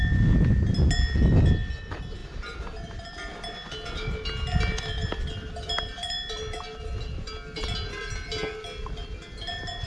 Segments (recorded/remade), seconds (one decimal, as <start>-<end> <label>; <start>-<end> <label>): 0.0-9.9 recorded